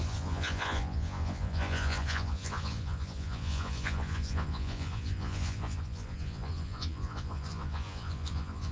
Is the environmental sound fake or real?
fake